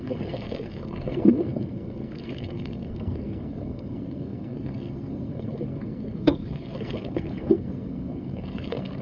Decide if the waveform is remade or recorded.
remade